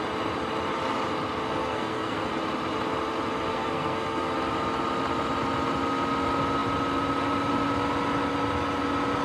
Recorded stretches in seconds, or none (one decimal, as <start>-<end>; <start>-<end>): 0.0-1.6; 2.3-3.5; 4.3-9.2

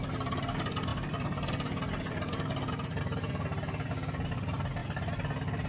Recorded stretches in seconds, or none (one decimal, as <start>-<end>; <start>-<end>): 0.0-5.7

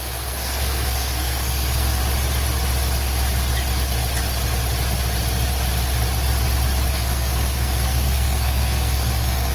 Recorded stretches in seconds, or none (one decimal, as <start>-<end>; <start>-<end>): 2.0-6.9

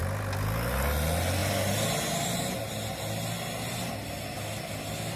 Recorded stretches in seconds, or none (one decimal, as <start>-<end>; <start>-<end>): 0.0-5.2

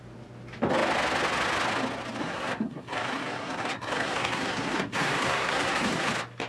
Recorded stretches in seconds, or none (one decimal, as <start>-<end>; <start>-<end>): 0.0-2.2; 6.1-6.5

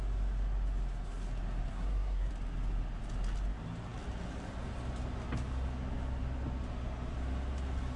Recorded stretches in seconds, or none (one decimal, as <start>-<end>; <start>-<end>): 0.0-1.7; 2.3-8.0

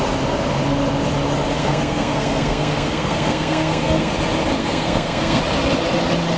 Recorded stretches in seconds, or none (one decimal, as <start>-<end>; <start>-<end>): 0.0-1.6; 4.1-4.6; 5.4-6.4